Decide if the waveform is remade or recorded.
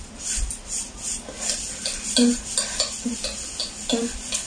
recorded